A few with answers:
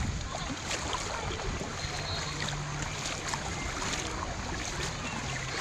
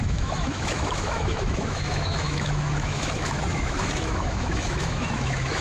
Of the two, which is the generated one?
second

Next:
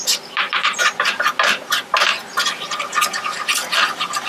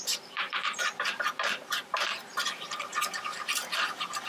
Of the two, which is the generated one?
second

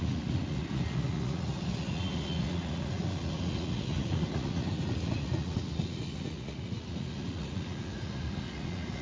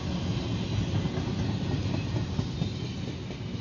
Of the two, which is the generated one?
first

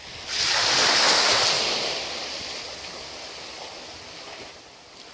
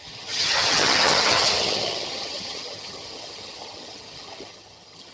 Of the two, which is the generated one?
second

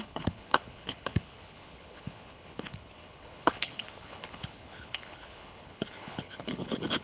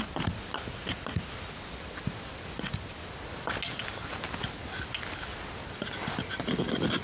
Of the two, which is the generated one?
first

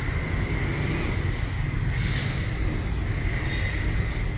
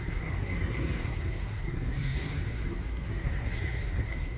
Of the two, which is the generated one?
second